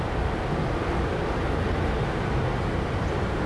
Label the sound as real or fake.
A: real